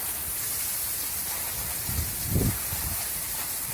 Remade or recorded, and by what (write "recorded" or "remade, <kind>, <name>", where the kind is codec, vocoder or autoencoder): remade, vocoder, BigVGAN v2